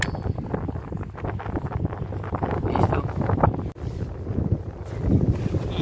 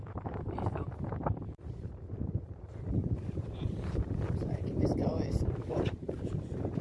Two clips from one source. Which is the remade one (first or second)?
second